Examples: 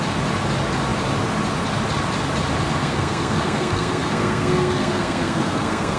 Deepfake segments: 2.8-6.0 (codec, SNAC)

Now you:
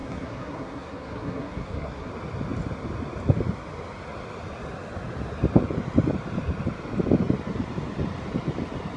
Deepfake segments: 0.0-2.1 (codec, SNAC)